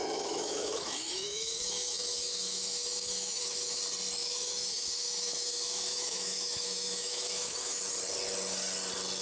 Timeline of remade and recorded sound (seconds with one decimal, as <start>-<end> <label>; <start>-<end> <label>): 0.0-3.8 remade; 3.8-4.2 recorded; 4.2-7.8 remade; 7.8-9.2 recorded